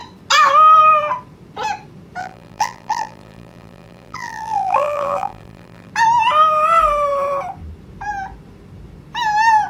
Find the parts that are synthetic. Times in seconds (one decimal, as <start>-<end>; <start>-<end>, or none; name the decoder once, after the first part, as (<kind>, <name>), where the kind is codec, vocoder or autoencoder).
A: 2.2-5.9 (vocoder, BigVGAN v2)